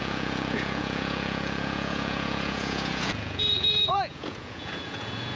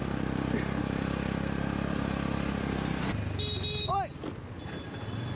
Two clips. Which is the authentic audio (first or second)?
second